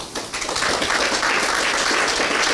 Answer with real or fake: real